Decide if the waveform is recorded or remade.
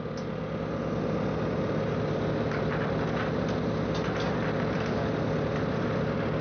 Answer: recorded